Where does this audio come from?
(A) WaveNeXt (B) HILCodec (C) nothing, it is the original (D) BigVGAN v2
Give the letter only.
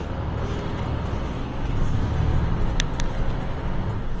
C